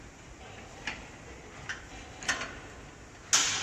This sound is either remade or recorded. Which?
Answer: recorded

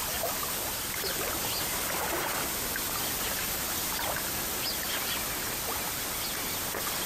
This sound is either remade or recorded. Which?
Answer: recorded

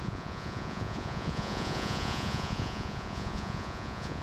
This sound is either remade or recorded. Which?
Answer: remade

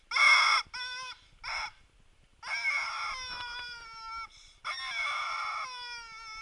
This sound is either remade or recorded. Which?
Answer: recorded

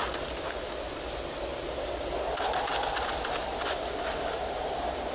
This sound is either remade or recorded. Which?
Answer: recorded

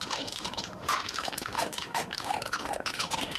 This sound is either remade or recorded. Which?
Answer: remade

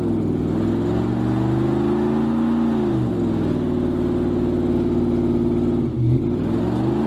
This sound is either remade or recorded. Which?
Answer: recorded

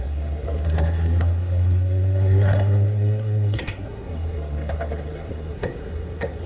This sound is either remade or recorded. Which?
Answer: remade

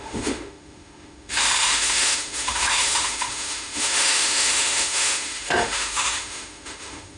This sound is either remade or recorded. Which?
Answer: remade